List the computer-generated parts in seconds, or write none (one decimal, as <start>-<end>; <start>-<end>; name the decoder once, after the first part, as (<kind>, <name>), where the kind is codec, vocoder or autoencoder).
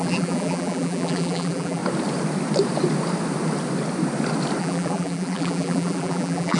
0.0-1.8 (vocoder, BigVGAN v2); 4.6-6.6